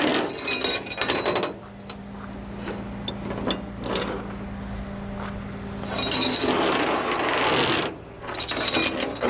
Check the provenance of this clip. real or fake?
real